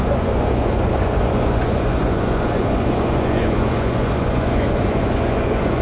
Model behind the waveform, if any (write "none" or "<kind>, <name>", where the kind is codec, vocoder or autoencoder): vocoder, Vocos